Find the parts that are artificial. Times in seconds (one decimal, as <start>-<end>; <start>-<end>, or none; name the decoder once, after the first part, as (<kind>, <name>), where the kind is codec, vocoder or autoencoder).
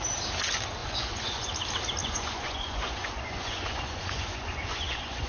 0.8-1.5 (vocoder, Vocos); 2.0-5.3